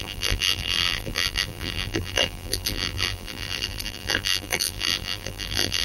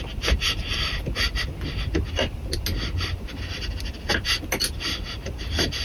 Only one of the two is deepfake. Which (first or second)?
first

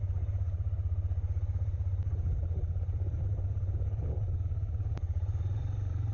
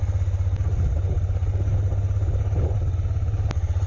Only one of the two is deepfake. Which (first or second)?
first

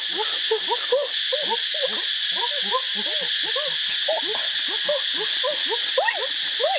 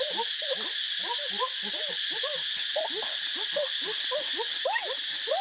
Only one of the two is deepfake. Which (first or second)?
second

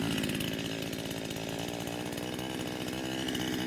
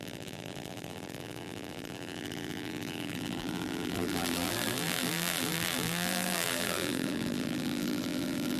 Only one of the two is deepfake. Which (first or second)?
second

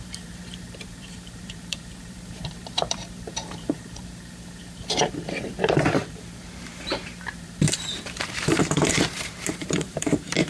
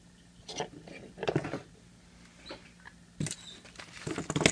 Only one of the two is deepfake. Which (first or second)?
first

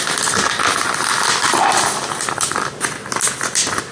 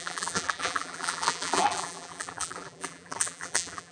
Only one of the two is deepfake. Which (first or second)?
second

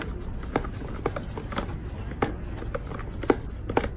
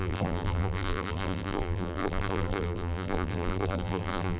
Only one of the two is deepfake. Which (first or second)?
second